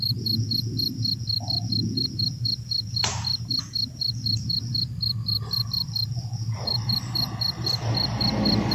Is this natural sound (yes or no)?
yes